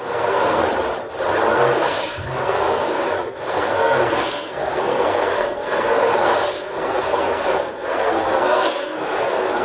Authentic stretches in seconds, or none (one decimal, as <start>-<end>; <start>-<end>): 0.6-1.5